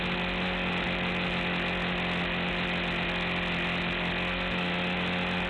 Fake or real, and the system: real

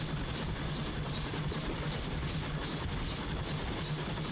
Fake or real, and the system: real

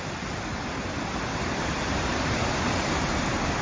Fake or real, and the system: real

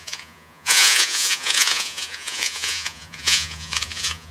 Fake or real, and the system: fake, vocoder, Vocos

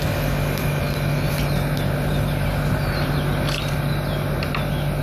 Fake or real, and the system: real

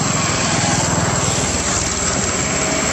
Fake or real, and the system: real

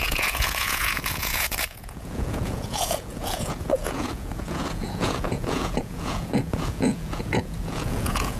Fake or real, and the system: fake, vocoder, Vocos